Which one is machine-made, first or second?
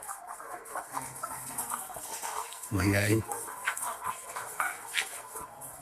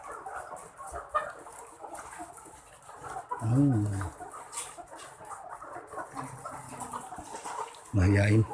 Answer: first